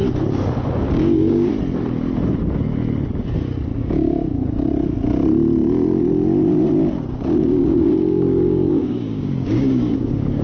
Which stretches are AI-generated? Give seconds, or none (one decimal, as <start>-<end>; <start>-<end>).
0.9-1.5; 3.8-4.4; 7.4-10.4